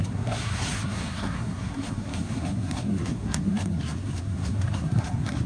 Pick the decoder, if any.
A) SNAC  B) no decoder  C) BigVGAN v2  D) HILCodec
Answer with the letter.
A